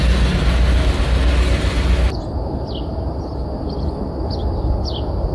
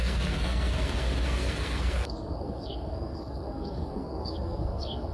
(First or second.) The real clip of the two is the first